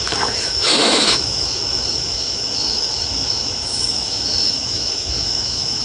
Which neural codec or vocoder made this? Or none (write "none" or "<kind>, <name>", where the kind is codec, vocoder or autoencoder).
autoencoder, DAC-VAE